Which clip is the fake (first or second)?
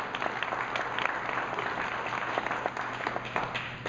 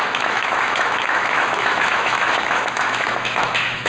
second